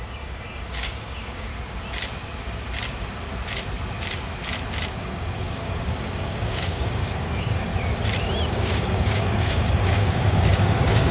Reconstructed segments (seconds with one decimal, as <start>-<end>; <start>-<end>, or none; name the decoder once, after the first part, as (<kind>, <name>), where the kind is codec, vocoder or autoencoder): 0.0-1.5 (codec, DAC); 5.0-7.7; 8.5-11.1